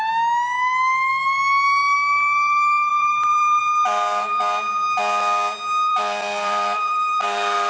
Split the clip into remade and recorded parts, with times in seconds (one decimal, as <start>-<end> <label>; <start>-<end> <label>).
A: 0.0-2.9 recorded; 2.9-3.6 remade; 3.6-5.9 recorded; 5.9-7.7 remade